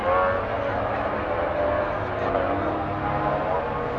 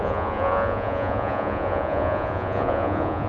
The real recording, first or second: first